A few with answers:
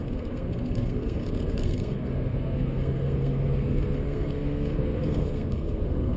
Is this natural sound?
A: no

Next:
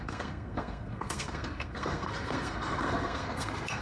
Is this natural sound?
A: no